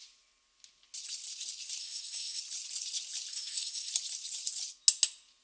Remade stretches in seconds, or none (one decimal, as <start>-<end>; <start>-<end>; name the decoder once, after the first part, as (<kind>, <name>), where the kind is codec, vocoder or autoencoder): 1.8-2.4 (codec, SNAC); 3.3-3.9